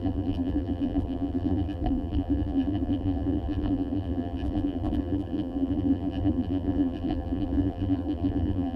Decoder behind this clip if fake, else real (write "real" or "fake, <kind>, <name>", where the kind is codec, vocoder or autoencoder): fake, vocoder, BigVGAN v2